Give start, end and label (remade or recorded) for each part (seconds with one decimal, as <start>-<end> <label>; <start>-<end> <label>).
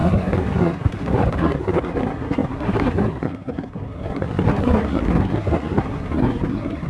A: 0.0-6.9 remade